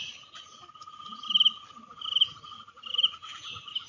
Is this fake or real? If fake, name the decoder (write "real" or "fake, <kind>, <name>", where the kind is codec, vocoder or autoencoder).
real